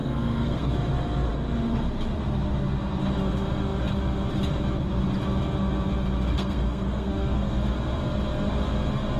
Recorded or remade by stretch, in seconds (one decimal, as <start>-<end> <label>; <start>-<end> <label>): 0.0-0.7 remade; 0.7-6.3 recorded; 6.3-7.5 remade; 7.5-9.2 recorded